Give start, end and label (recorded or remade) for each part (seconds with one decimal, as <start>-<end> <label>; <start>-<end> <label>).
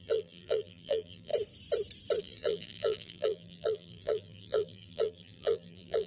0.0-1.3 remade; 1.3-2.2 recorded; 2.2-6.1 remade